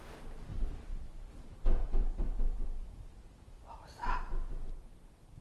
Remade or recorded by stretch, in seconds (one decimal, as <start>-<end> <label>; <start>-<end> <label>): 0.0-0.5 recorded; 0.5-3.7 remade; 3.7-5.4 recorded